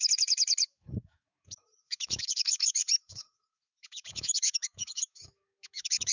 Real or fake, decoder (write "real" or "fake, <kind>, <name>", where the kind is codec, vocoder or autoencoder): fake, autoencoder, DAC-VAE